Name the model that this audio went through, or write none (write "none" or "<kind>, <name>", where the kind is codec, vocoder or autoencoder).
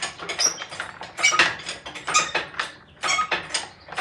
none